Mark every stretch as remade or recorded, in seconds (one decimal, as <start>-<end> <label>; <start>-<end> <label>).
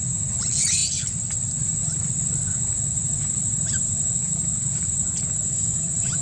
0.0-6.2 recorded